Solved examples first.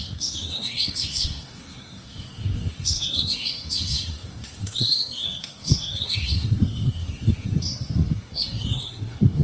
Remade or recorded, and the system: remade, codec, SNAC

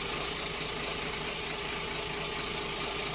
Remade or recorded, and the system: recorded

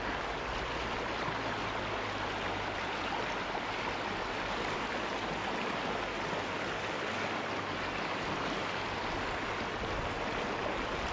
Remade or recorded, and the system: recorded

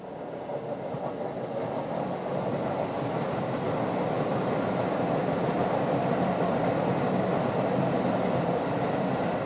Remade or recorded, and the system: recorded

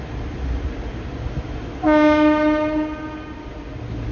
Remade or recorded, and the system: recorded